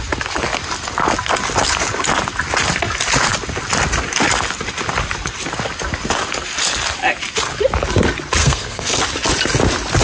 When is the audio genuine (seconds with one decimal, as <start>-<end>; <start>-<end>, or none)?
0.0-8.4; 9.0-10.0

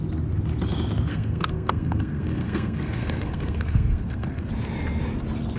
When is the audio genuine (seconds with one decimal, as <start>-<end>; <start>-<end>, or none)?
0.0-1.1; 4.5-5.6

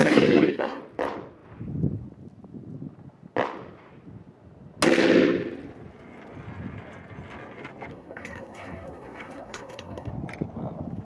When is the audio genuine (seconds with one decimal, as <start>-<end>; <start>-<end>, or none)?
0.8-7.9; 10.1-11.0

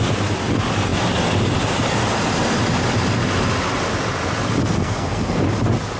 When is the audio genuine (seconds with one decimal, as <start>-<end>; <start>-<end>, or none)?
0.0-4.6; 5.4-6.0

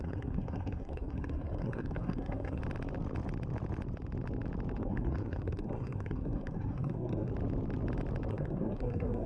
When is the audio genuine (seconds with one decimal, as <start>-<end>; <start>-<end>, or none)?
2.6-4.8; 7.3-8.3